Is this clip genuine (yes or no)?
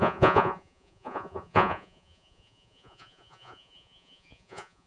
no